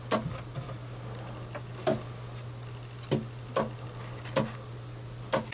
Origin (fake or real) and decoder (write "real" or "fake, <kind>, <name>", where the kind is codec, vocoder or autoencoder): real